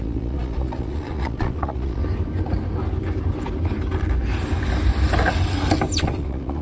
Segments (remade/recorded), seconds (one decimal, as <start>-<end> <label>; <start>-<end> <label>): 0.0-2.0 remade; 2.0-6.0 recorded; 6.0-6.6 remade